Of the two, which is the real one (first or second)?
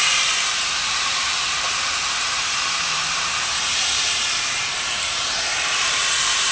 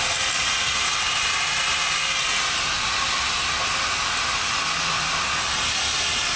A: second